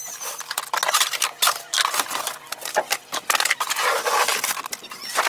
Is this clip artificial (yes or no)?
yes